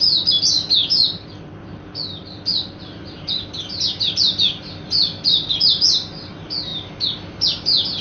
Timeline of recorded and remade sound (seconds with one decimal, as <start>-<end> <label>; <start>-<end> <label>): 0.0-8.0 recorded